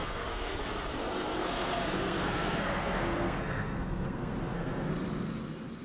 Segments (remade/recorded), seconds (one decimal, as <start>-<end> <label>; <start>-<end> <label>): 0.0-0.6 remade; 0.6-1.4 recorded; 1.4-4.9 remade; 4.9-5.8 recorded